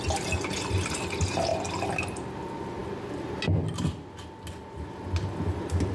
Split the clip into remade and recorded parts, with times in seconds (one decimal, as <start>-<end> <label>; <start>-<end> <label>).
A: 0.0-5.9 recorded